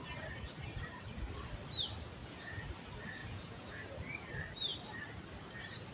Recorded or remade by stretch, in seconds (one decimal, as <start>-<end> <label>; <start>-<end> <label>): 0.0-2.2 recorded; 2.2-2.7 remade; 2.7-3.2 recorded; 3.2-3.9 remade; 3.9-5.9 recorded